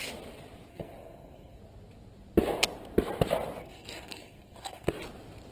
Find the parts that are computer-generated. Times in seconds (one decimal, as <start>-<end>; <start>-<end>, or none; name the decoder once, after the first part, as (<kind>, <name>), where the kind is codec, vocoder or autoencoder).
0.7-1.6 (codec, SNAC); 3.6-4.9